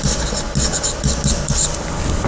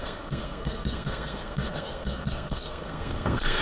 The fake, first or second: second